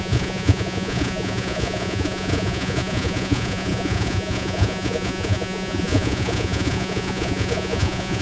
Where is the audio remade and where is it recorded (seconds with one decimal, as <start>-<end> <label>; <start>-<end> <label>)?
0.0-8.2 remade